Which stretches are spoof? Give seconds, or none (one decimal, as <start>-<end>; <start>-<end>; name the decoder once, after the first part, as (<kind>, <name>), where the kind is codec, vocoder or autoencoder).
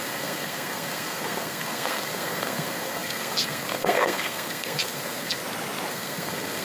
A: 0.0-5.4 (codec, SNAC); 5.9-6.6